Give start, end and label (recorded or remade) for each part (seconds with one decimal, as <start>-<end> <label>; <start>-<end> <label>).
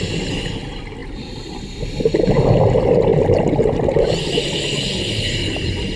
0.0-6.0 recorded